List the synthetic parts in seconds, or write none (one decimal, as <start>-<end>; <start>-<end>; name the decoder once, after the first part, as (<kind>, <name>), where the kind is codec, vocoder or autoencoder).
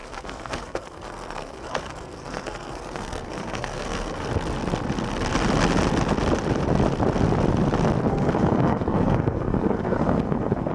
0.0-4.3 (codec, SNAC); 8.1-10.7